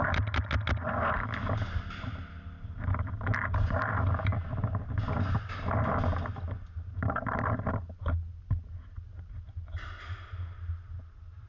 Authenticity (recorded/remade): recorded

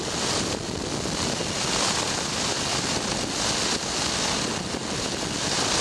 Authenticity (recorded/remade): recorded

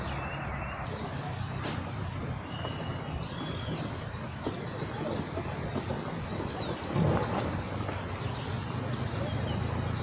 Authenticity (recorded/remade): recorded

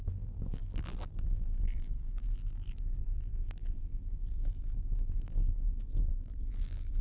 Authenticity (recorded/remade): remade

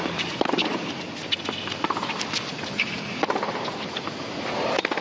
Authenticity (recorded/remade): recorded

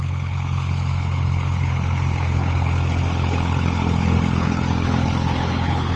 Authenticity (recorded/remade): remade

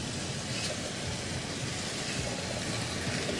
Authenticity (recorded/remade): recorded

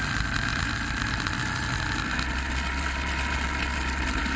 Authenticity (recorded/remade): recorded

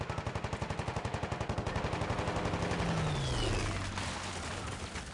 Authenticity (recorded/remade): recorded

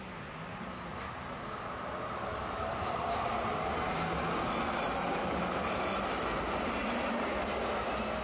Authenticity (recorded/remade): recorded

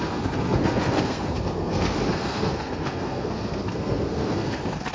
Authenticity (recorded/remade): remade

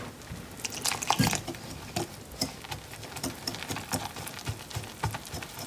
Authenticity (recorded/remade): recorded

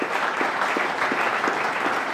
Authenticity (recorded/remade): recorded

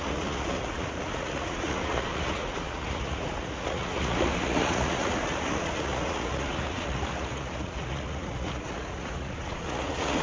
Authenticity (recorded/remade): remade